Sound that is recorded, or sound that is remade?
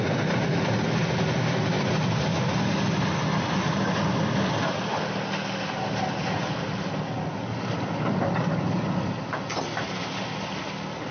recorded